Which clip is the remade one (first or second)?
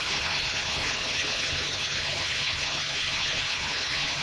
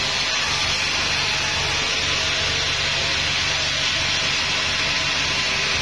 first